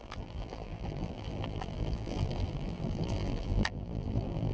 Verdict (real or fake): fake